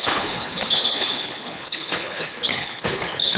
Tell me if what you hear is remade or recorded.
remade